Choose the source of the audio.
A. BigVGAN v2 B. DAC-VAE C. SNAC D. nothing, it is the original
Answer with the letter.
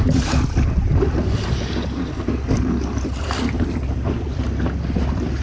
A